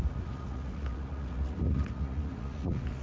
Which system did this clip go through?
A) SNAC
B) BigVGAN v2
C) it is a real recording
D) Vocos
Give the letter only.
D